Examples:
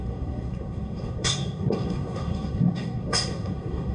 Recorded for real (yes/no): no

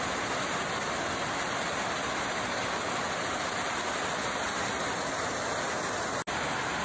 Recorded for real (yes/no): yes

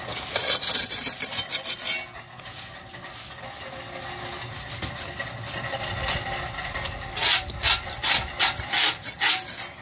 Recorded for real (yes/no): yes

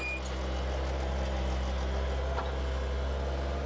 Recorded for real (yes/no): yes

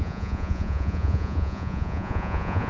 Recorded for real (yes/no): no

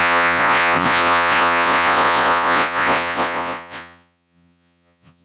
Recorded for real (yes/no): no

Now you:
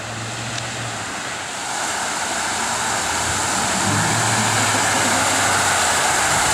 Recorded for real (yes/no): yes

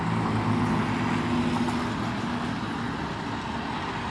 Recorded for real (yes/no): yes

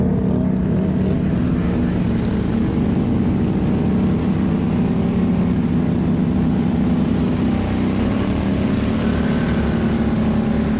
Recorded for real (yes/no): yes